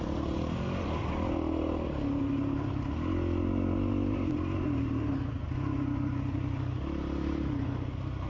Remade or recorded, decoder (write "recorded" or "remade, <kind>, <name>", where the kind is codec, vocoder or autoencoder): recorded